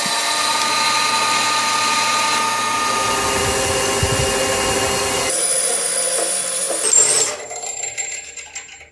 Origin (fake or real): real